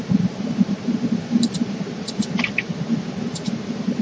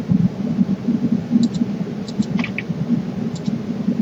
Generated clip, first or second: first